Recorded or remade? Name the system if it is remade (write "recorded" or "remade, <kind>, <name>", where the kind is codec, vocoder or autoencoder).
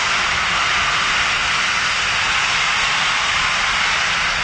recorded